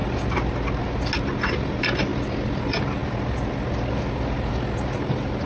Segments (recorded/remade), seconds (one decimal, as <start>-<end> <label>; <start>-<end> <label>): 0.0-2.1 recorded; 2.1-2.6 remade; 2.6-5.5 recorded

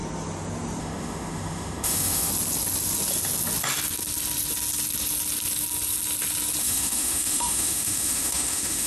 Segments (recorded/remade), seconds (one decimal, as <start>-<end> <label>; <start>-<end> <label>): 0.0-0.8 recorded; 0.8-2.3 remade; 2.3-6.6 recorded; 6.6-8.9 remade

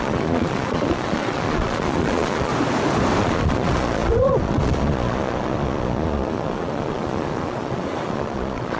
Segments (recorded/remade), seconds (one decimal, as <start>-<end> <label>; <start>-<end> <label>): 0.0-2.5 remade; 2.5-3.2 recorded; 3.2-8.8 remade

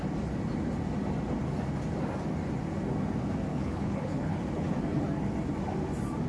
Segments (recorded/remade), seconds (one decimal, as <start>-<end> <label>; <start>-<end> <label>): 0.0-3.5 recorded; 3.5-4.4 remade; 4.4-6.3 recorded

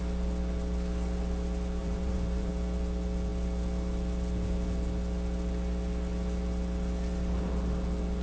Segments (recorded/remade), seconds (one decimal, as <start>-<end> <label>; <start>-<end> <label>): 0.0-1.8 recorded; 1.8-2.5 remade; 2.5-8.2 recorded

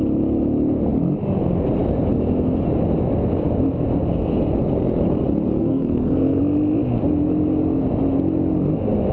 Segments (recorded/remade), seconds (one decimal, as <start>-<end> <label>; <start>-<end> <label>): 0.0-5.6 recorded; 5.6-6.4 remade; 6.4-9.1 recorded

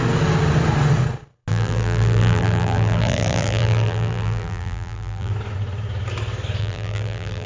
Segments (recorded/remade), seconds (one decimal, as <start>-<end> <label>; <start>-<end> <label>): 0.0-1.5 recorded; 1.5-5.3 remade; 5.3-6.6 recorded; 6.6-7.5 remade